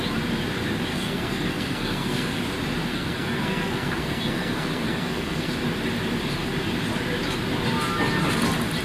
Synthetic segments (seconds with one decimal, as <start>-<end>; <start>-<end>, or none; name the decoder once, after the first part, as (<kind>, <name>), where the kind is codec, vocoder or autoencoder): 0.9-2.4 (codec, SNAC); 2.9-5.5